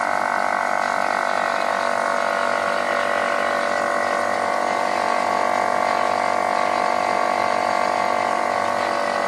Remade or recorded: recorded